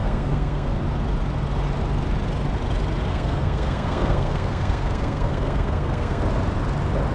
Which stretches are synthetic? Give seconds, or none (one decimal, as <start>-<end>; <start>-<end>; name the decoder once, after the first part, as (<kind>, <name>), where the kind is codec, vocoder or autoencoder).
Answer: 0.0-0.8 (codec, SNAC); 3.1-6.2